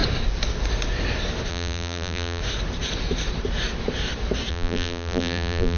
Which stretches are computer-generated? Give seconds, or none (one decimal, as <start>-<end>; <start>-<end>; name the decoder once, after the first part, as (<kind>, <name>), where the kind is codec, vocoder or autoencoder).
1.5-2.4 (vocoder, BigVGAN v2); 4.5-5.8